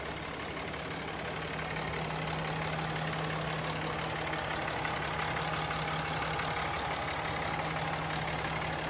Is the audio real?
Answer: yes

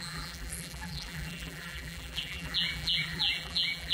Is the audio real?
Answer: no